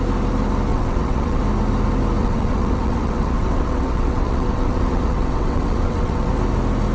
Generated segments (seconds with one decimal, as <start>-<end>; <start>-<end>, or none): 0.7-1.4; 2.2-6.3